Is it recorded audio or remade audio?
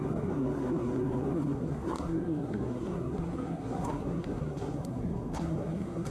remade